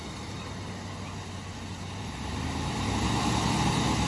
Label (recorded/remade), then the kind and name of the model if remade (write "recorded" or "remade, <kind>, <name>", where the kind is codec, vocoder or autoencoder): recorded